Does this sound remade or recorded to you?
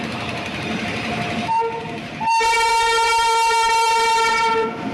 remade